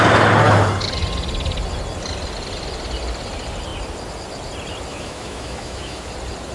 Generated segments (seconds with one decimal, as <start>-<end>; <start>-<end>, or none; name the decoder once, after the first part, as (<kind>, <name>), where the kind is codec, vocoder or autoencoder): 4.9-6.1 (autoencoder, DAC-VAE)